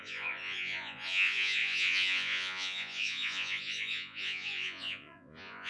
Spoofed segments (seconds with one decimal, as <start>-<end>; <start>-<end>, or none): 0.0-5.7